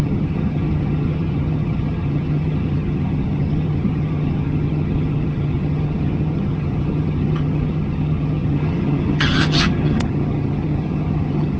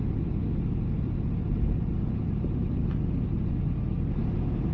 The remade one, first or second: first